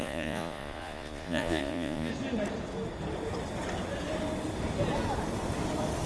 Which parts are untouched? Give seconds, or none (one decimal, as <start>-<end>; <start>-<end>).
2.1-6.1